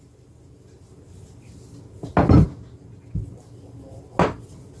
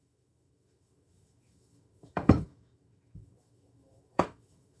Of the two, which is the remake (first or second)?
second